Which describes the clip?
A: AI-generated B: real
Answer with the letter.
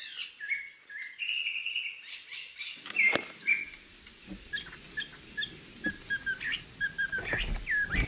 B